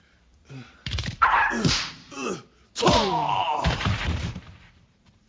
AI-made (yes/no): yes